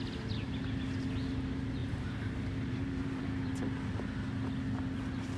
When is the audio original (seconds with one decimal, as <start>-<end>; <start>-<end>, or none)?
0.0-1.8; 3.5-5.4